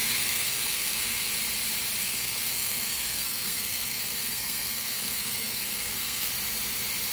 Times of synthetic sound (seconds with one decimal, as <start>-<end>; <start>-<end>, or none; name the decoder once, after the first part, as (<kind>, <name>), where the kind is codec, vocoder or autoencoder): 0.0-1.3 (codec, SNAC); 2.0-6.3